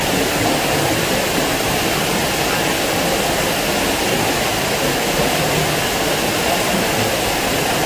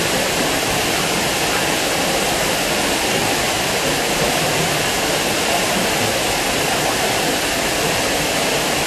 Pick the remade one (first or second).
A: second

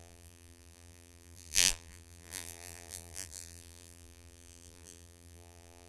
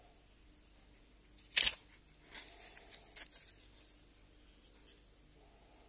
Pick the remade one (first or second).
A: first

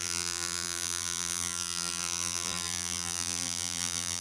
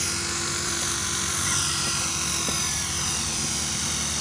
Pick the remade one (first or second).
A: first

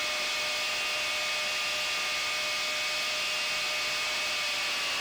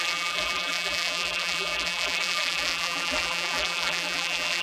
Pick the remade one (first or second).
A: second